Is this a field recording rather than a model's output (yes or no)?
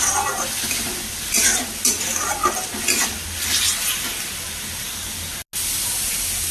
yes